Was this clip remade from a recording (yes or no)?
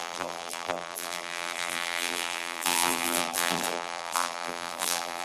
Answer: yes